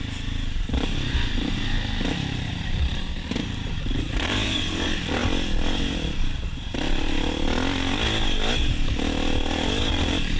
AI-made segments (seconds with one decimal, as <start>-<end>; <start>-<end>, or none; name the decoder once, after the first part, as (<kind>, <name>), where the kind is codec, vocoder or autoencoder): 0.0-5.2 (vocoder, BigVGAN v2); 9.9-10.4